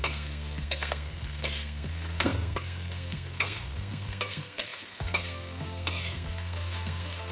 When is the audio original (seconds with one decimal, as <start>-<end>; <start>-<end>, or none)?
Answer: none